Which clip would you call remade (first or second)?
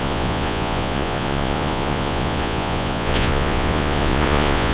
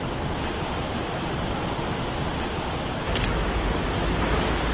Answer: first